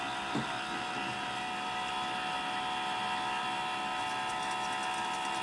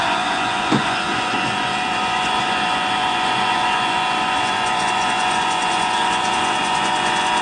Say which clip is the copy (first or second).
second